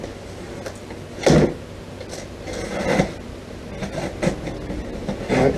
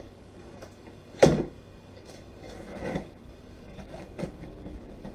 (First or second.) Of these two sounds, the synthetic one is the second